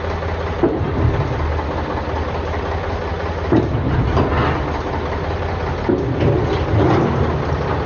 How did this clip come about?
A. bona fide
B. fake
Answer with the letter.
A